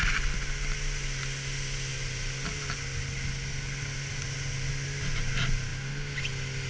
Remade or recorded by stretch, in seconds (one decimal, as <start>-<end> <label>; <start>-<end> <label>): 0.0-6.7 recorded